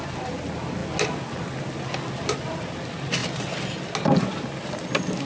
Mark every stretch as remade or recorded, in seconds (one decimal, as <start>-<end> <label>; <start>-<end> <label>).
0.0-5.3 recorded

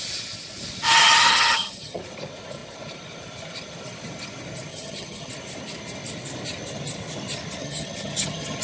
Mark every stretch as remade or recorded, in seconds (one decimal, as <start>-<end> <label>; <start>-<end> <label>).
0.0-1.3 recorded; 1.3-2.0 remade; 2.0-4.7 recorded; 4.7-5.3 remade; 5.3-7.6 recorded; 7.6-8.6 remade